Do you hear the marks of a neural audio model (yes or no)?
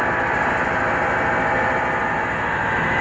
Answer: no